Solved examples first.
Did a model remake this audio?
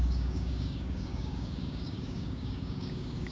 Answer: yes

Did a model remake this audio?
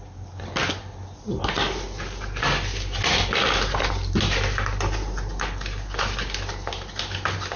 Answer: no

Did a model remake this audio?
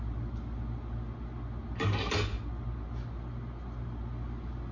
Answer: no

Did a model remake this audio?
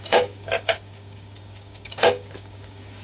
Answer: yes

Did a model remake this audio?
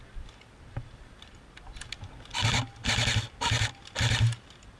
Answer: no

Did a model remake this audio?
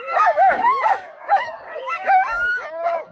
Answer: yes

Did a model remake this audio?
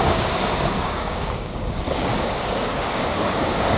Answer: yes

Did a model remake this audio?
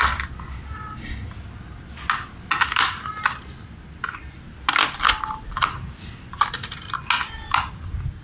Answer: no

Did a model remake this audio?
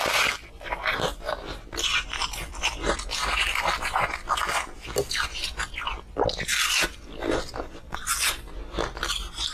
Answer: no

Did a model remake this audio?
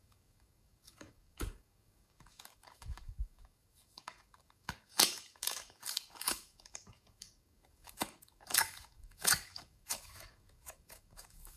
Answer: yes